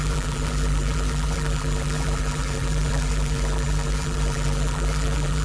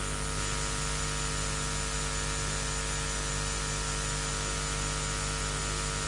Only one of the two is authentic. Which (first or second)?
second